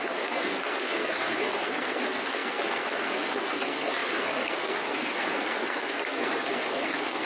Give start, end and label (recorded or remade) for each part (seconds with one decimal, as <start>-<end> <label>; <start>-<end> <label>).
0.0-7.3 remade